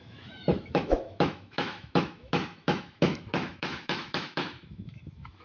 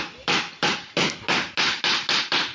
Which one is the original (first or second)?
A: second